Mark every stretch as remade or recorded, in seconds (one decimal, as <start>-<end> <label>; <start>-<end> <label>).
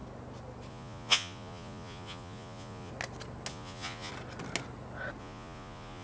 0.0-0.7 recorded; 0.7-2.9 remade; 2.9-3.5 recorded; 3.5-4.1 remade; 4.1-5.2 recorded; 5.2-6.0 remade